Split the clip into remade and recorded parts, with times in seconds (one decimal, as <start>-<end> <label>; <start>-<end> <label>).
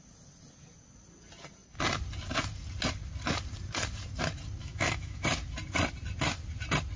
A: 0.0-4.6 recorded; 4.6-5.2 remade; 5.2-7.0 recorded